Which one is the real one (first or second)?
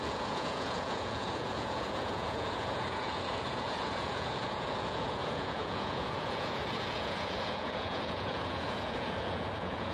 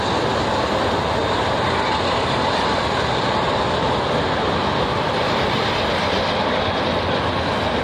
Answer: second